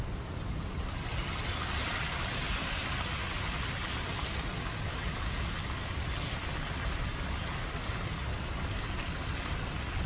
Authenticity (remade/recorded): recorded